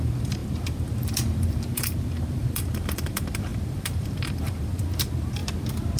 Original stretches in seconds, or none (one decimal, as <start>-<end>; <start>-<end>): 5.4-6.0